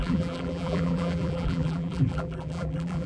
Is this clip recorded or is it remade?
remade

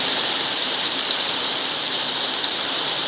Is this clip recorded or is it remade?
remade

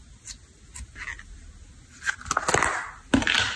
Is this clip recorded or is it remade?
recorded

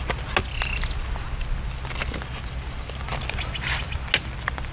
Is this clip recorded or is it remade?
recorded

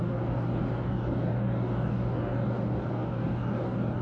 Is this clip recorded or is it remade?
remade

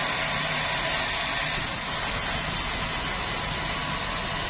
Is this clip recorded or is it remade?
recorded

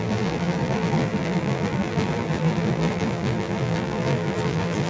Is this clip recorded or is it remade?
remade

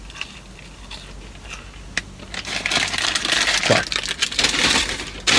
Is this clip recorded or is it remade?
recorded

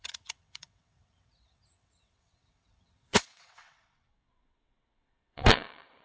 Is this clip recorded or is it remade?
remade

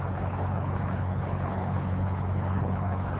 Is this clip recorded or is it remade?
remade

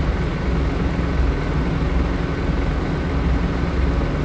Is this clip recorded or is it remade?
recorded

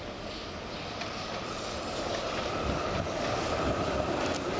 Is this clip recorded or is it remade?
recorded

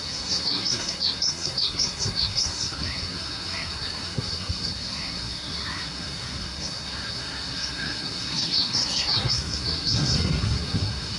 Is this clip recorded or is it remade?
remade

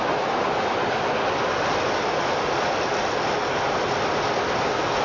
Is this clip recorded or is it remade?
recorded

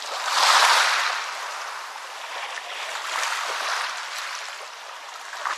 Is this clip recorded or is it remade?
recorded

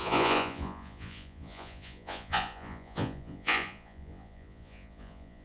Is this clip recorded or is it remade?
remade